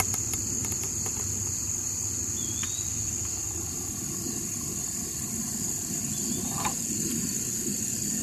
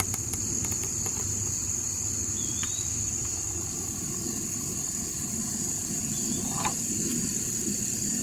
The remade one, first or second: second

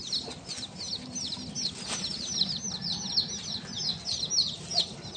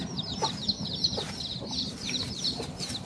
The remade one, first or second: second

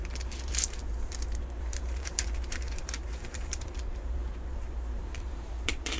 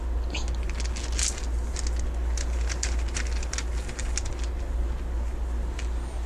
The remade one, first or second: first